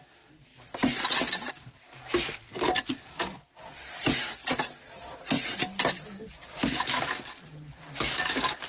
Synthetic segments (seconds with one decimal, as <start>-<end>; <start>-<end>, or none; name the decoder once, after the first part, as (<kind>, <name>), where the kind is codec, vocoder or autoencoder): none